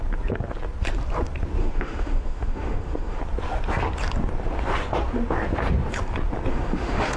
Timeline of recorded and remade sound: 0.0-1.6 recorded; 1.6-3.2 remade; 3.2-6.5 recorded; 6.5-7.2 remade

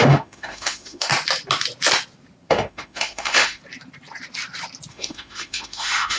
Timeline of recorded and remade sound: 0.0-1.1 remade; 1.1-2.5 recorded; 2.5-3.6 remade; 3.6-4.9 recorded; 4.9-6.2 remade

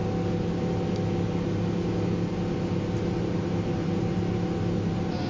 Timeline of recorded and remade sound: 0.0-3.2 recorded; 3.2-5.3 remade

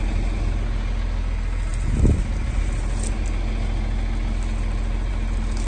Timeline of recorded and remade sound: 0.0-5.7 recorded

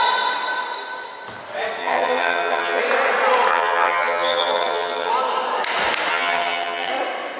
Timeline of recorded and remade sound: 0.0-1.8 recorded; 1.8-2.8 remade; 2.8-3.5 recorded; 3.5-5.1 remade; 5.1-6.1 recorded; 6.1-6.9 remade; 6.9-7.4 recorded

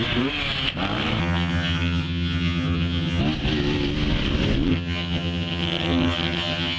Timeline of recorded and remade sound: 0.0-1.2 recorded; 1.2-3.2 remade; 3.2-4.7 recorded; 4.7-6.8 remade

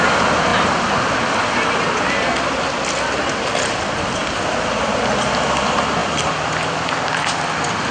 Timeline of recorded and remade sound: 0.0-7.9 recorded